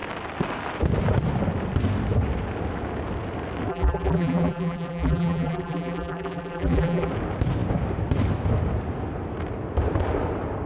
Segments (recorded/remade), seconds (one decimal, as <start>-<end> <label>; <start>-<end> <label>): 0.0-3.7 recorded; 3.7-7.1 remade; 7.1-10.7 recorded